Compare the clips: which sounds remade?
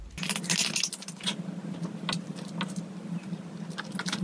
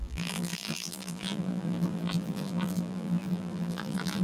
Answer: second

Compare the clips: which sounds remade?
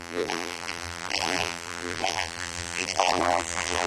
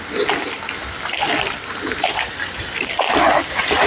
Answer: first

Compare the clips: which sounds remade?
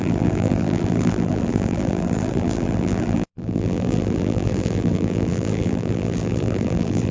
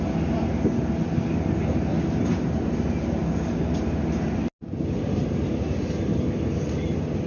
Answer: first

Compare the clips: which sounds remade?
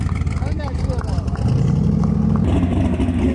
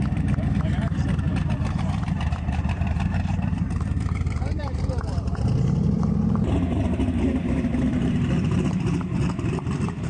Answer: second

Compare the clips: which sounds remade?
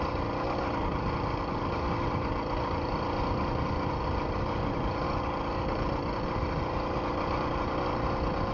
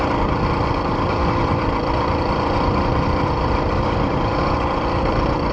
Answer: second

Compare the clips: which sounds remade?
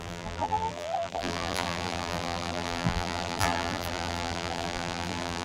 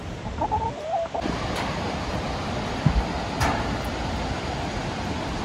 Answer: first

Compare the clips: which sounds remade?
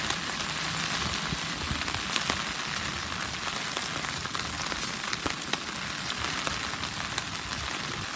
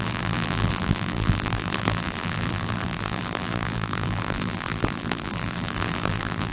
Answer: second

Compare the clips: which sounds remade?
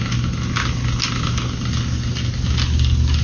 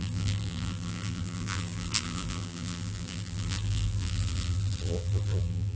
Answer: second